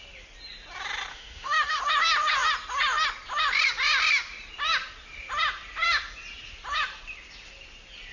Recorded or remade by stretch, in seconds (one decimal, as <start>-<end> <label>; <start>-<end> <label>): 0.0-1.1 recorded; 1.1-1.8 remade; 1.8-8.1 recorded